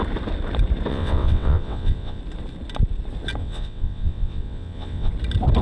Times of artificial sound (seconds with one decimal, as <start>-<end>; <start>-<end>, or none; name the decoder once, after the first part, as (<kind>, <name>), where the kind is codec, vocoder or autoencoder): 0.9-2.2 (vocoder, WaveNeXt); 3.4-5.1